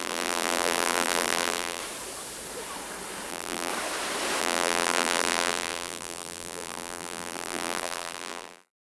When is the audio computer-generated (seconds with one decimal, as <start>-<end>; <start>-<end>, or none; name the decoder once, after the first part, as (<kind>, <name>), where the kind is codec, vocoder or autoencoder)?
0.0-1.8 (vocoder, BigVGAN v2); 3.3-3.7; 4.4-9.0